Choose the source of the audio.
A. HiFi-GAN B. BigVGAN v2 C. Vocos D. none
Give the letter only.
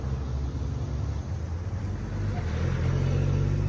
D